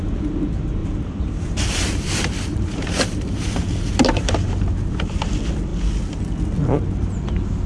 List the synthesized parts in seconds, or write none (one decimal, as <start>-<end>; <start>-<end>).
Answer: 0.8-5.3